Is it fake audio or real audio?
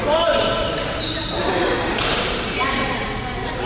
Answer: real